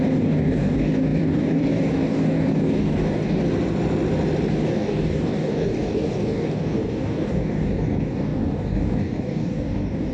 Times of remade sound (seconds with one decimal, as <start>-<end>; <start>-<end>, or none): 0.0-3.4; 4.5-10.1